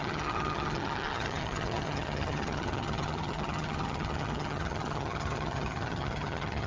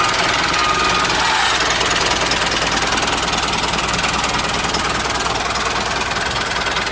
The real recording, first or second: second